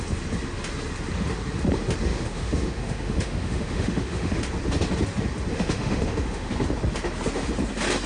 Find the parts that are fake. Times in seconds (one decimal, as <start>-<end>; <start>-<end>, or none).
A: 2.1-4.4; 5.5-6.5